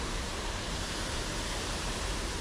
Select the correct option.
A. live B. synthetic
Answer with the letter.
B